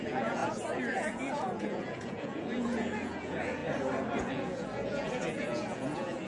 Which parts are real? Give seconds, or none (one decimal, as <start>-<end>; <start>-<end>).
3.6-4.2